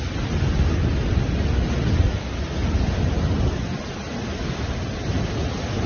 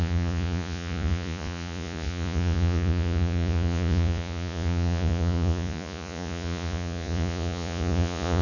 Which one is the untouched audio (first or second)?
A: first